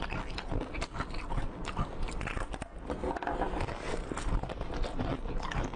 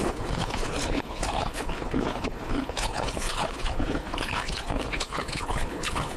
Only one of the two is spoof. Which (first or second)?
second